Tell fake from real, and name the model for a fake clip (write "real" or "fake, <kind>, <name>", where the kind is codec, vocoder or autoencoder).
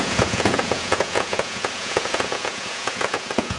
fake, vocoder, Vocos